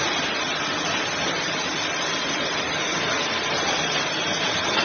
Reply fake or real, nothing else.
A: fake